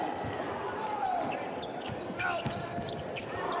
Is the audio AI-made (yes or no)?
yes